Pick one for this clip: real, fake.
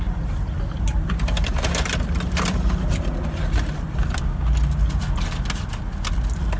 real